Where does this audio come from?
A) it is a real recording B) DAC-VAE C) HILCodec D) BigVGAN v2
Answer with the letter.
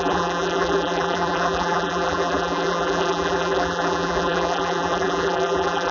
D